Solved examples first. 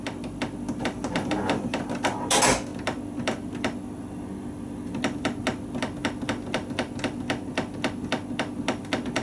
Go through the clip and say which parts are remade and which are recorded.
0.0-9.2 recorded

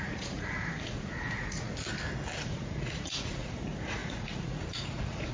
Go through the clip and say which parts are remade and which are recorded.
0.0-1.7 remade; 1.7-2.4 recorded; 2.4-5.3 remade

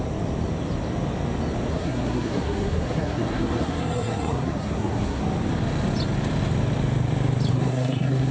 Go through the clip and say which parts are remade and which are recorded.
0.0-1.7 recorded; 1.7-5.2 remade; 5.2-7.5 recorded; 7.5-8.3 remade

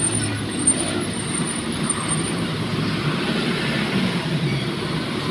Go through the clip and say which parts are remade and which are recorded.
0.0-2.7 remade; 2.7-3.8 recorded; 3.8-5.3 remade

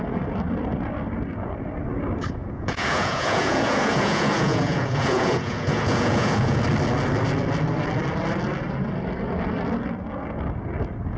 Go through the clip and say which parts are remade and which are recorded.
0.0-2.4 recorded; 2.4-6.6 remade; 6.6-11.2 recorded

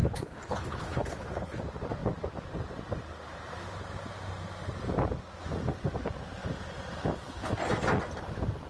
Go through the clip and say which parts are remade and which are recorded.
0.0-1.6 remade; 1.6-8.7 recorded

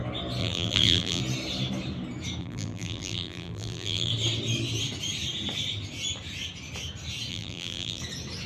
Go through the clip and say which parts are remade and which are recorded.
0.0-0.4 recorded; 0.4-1.2 remade; 1.2-2.4 recorded; 2.4-4.1 remade; 4.1-7.3 recorded; 7.3-8.0 remade; 8.0-8.5 recorded